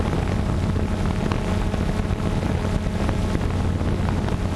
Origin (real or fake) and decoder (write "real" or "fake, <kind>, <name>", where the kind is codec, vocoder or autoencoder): real